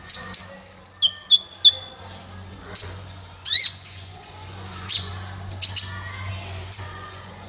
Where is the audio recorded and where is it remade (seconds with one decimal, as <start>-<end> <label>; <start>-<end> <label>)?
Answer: 0.0-0.4 remade; 0.4-2.5 recorded; 2.5-5.1 remade; 5.1-6.3 recorded; 6.3-7.5 remade